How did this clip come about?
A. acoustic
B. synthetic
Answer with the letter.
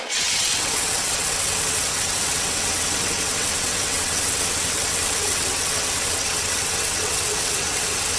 B